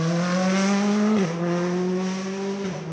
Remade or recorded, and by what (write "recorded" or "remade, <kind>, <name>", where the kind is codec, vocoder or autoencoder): recorded